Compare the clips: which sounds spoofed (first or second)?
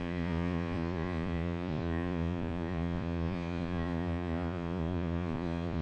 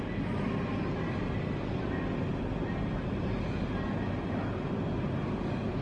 first